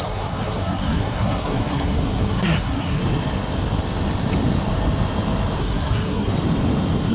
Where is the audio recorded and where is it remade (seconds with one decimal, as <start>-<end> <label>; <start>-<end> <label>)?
0.0-3.0 remade; 3.0-5.6 recorded; 5.6-6.3 remade; 6.3-7.1 recorded